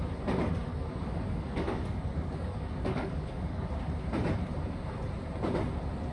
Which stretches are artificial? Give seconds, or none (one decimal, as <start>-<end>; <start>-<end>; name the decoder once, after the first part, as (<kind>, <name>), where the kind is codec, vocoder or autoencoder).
0.7-3.7 (codec, DAC)